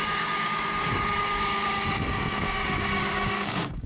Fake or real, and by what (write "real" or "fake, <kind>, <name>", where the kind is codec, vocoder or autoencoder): fake, codec, DAC